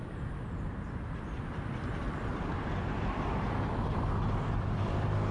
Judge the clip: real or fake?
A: fake